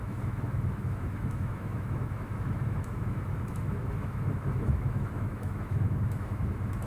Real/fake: fake